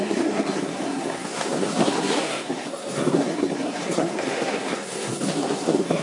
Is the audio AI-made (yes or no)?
yes